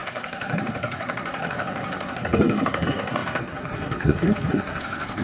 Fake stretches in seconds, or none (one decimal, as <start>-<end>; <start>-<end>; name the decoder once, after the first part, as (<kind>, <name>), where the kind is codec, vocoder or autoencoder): 0.0-5.2 (codec, SNAC)